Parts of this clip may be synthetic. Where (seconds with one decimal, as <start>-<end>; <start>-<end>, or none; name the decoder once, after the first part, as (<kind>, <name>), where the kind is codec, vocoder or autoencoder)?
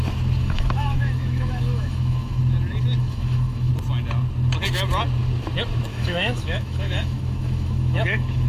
0.4-2.4 (autoencoder, DAC-VAE); 3.0-3.7; 5.9-8.5